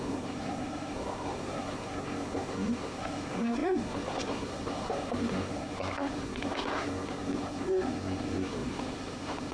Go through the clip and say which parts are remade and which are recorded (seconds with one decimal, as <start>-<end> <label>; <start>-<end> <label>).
0.0-9.5 remade